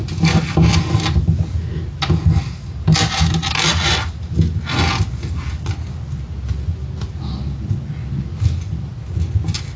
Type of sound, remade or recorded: recorded